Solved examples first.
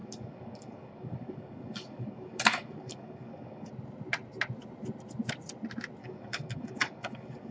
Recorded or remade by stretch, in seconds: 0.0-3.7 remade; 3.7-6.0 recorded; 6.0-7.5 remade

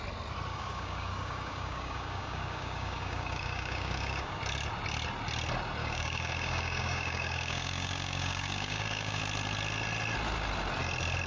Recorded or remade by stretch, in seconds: 0.0-0.5 recorded; 0.5-4.4 remade; 4.4-5.8 recorded; 5.8-9.2 remade; 9.2-11.3 recorded